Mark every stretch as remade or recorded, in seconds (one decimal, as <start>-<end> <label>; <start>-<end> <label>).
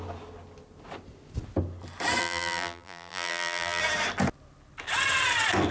0.0-2.2 recorded; 2.2-3.8 remade; 3.8-5.7 recorded